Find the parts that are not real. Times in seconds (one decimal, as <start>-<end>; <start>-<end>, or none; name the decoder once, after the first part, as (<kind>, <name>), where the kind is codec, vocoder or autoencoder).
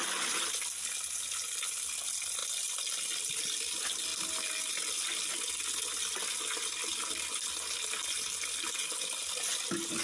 none